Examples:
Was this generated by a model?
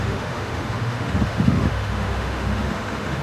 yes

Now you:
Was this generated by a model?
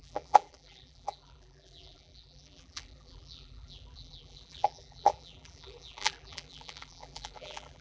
yes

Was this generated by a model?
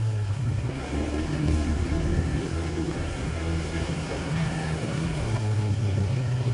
yes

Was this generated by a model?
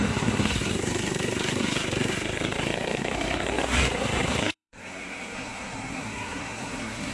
yes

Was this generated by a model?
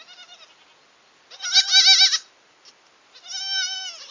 no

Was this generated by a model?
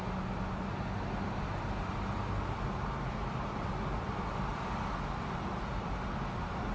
no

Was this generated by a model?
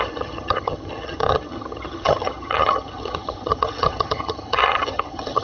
yes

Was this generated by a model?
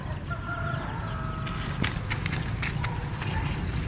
no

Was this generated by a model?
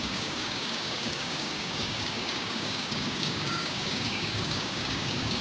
yes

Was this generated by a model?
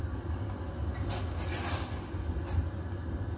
no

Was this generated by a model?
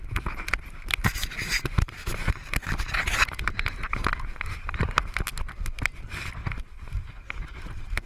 no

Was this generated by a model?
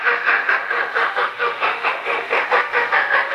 yes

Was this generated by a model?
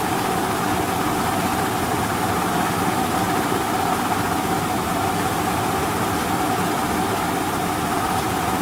no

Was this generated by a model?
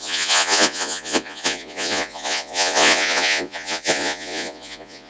yes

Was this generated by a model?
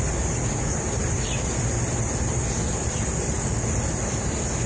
no